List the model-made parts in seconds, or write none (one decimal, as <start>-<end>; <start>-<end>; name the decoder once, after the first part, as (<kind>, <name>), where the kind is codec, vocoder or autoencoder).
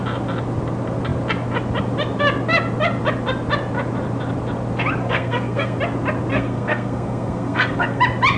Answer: 5.0-5.8 (codec, SNAC); 6.3-8.0